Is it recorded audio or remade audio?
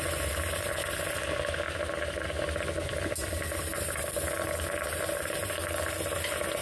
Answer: recorded